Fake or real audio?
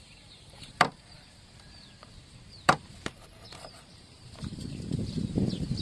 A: fake